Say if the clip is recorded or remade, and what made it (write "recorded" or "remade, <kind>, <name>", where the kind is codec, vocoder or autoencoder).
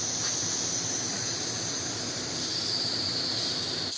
recorded